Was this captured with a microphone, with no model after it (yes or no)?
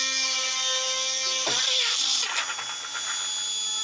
yes